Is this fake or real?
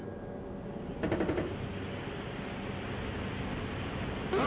real